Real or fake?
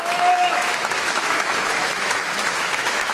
fake